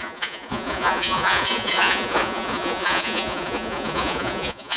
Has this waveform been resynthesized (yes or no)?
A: yes